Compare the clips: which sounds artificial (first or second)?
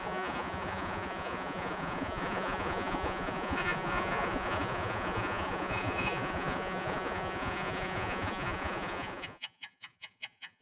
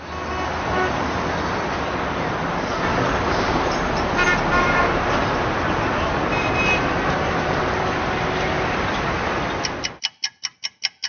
first